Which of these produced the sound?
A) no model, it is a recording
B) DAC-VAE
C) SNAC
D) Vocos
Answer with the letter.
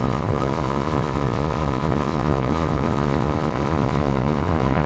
D